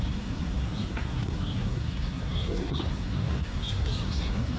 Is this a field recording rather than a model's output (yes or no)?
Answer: no